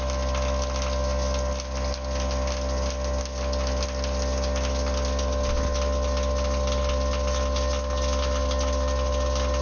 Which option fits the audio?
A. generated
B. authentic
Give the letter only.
B